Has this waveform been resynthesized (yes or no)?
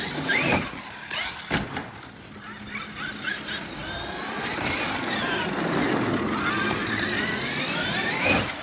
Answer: no